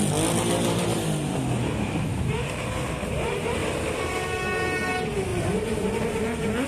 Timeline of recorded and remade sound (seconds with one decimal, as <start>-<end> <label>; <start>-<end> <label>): 0.0-2.1 recorded; 2.1-4.4 remade; 4.4-5.3 recorded; 5.3-6.2 remade; 6.2-6.7 recorded